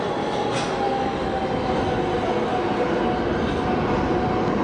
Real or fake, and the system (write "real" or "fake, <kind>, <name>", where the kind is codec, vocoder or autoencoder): real